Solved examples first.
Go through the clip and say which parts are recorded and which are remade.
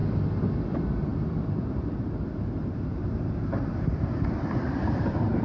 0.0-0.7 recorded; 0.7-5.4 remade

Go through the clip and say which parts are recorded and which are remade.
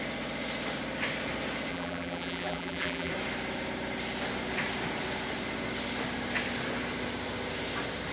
0.0-1.7 recorded; 1.7-3.1 remade; 3.1-8.1 recorded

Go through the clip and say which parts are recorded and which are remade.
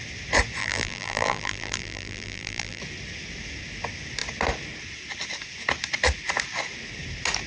0.0-0.6 recorded; 0.6-2.8 remade; 2.8-7.5 recorded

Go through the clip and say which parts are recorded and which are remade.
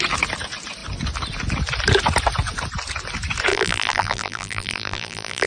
0.0-3.5 recorded; 3.5-5.5 remade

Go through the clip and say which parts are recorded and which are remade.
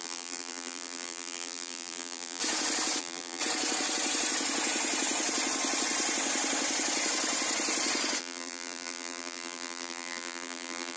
0.0-2.4 remade; 2.4-3.0 recorded; 3.0-3.4 remade; 3.4-8.2 recorded; 8.2-11.0 remade